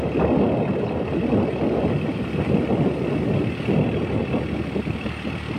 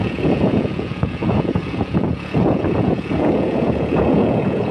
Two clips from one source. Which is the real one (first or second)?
first